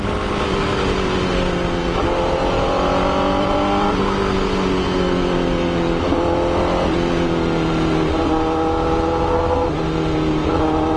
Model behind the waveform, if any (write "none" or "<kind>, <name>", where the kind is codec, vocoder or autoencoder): none